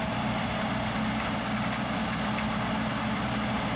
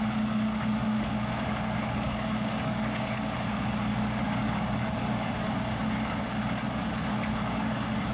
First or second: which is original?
first